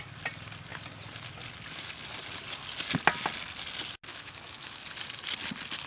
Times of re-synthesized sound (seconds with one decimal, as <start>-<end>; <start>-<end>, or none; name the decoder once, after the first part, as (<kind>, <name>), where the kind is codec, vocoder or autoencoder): 4.1-4.8 (autoencoder, DAC-VAE)